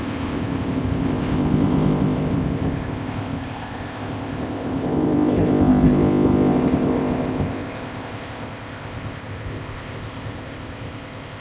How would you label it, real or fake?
fake